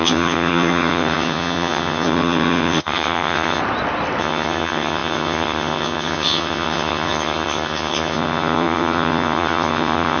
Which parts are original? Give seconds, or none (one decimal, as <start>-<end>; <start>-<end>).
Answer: 3.6-4.2